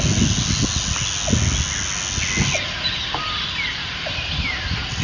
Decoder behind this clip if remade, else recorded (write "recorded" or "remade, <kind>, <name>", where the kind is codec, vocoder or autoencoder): recorded